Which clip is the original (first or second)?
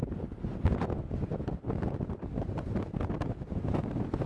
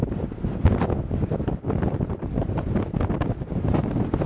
first